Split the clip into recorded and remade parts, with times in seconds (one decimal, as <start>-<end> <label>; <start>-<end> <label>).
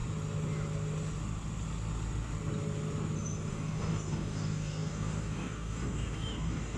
0.0-3.5 recorded; 3.5-6.8 remade